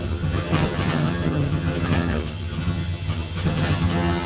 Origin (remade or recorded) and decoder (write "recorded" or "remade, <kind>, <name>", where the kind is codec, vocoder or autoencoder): remade, vocoder, HiFi-GAN